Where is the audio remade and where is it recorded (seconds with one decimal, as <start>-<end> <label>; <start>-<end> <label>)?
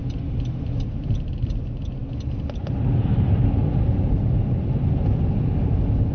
0.0-6.1 recorded